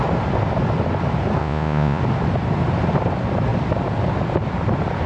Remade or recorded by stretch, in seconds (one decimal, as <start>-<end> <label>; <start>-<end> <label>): 0.0-1.4 recorded; 1.4-2.0 remade; 2.0-5.1 recorded